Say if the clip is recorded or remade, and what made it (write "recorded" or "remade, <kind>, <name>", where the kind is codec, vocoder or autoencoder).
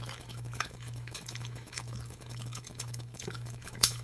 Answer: remade, autoencoder, DAC-VAE